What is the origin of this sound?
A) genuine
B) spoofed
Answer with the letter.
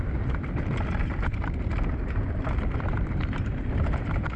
B